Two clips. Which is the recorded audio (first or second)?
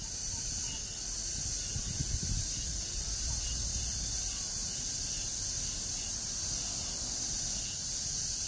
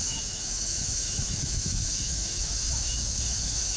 first